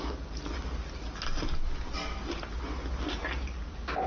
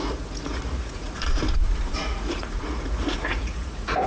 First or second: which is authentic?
first